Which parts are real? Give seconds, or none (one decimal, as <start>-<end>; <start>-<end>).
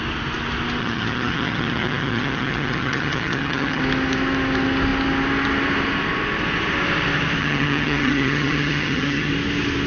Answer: 0.0-0.8; 3.8-7.4; 9.3-9.9